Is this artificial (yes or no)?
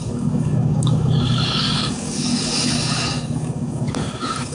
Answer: yes